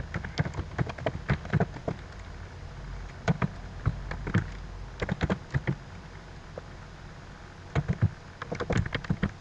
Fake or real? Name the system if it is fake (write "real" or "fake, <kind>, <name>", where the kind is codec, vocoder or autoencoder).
real